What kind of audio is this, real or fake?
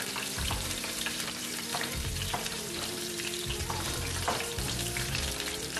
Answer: fake